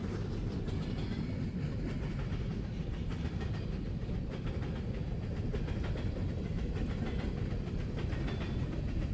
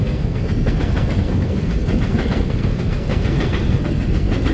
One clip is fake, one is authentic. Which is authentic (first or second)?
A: first